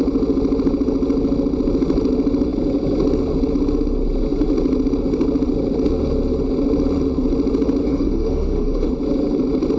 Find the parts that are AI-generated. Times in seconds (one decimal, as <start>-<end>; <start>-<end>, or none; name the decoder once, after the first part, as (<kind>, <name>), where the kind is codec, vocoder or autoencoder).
7.8-8.9 (autoencoder, DAC-VAE)